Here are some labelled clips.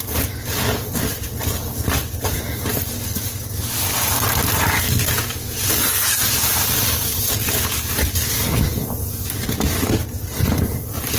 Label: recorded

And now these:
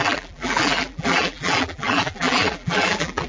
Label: remade